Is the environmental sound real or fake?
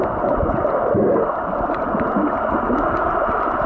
real